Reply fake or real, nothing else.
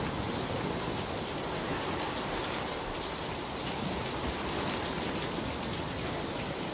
real